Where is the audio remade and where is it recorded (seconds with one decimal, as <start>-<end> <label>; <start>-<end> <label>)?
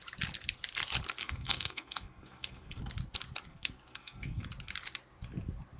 0.0-1.2 recorded; 1.2-2.8 remade; 2.8-3.5 recorded; 3.5-4.4 remade; 4.4-5.8 recorded